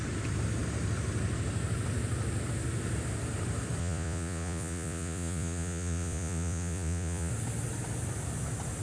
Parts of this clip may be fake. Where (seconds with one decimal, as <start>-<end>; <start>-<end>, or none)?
3.8-7.3

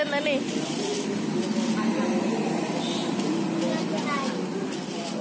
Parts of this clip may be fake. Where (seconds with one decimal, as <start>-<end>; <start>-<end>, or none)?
none

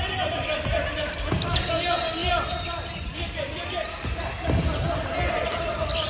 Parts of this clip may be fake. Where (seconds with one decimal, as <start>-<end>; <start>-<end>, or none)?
1.0-1.7

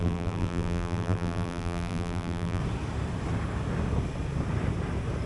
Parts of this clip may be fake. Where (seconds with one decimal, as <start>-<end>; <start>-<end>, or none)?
0.0-2.6